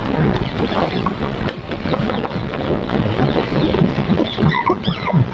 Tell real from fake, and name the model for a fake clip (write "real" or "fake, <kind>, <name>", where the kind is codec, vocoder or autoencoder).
fake, vocoder, WaveNeXt